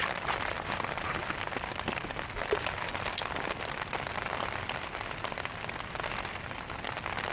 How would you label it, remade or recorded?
recorded